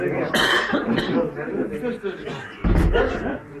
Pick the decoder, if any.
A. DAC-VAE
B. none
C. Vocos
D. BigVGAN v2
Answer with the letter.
B